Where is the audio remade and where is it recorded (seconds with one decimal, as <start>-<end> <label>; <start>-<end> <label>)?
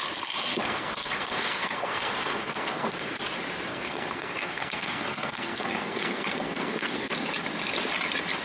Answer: 0.0-0.5 recorded; 0.5-3.2 remade; 3.2-3.7 recorded; 3.7-7.1 remade; 7.1-8.4 recorded